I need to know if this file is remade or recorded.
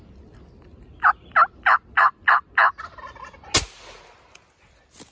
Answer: recorded